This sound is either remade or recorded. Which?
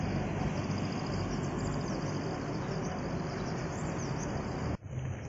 recorded